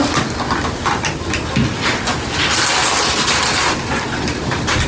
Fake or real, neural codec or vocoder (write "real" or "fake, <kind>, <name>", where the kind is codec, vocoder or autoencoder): real